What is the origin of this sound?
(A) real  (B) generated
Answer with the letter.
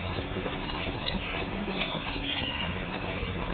B